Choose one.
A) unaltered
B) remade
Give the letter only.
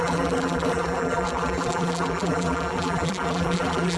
B